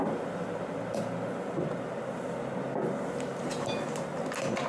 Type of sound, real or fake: real